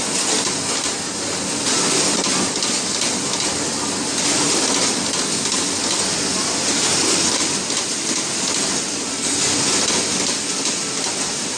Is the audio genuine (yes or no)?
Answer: yes